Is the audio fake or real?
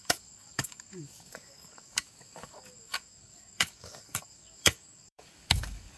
fake